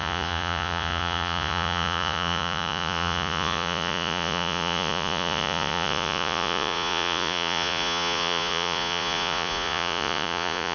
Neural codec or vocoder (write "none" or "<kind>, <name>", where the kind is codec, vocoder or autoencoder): vocoder, Vocos